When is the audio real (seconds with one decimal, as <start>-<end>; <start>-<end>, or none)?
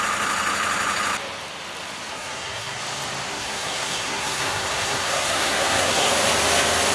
0.0-2.1; 2.8-3.3; 6.1-6.9